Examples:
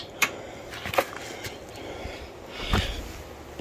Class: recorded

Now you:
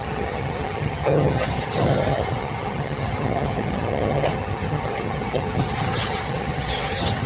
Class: remade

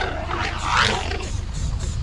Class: recorded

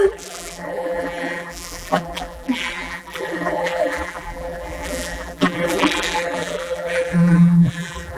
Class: remade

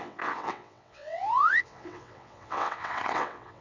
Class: remade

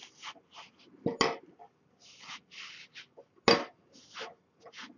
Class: recorded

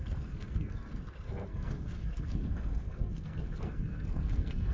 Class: remade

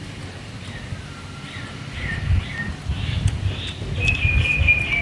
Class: recorded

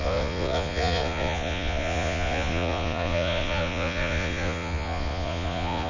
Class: remade